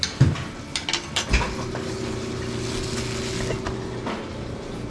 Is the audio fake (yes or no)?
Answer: no